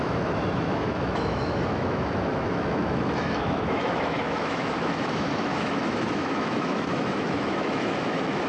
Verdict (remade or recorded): remade